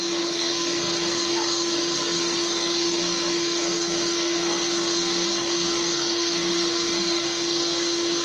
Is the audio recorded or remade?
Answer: remade